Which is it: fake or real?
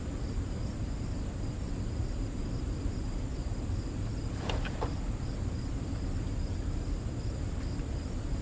real